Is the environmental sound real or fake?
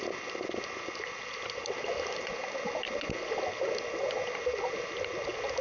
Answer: real